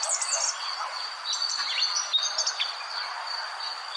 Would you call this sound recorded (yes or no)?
yes